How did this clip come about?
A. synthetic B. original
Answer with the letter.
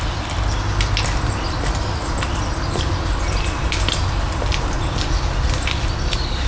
B